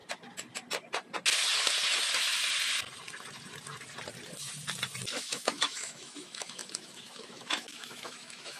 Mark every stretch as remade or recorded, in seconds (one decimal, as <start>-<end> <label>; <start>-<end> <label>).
0.0-5.1 recorded; 5.1-8.6 remade